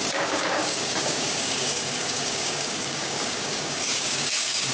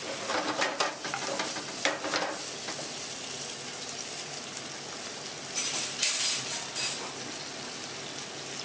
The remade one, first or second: first